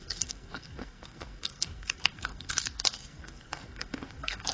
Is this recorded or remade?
remade